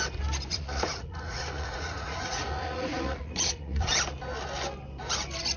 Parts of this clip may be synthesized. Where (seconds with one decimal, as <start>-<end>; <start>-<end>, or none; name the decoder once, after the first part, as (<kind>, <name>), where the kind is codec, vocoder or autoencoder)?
0.5-3.9 (vocoder, Vocos)